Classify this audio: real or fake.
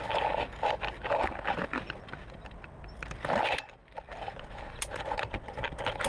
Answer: real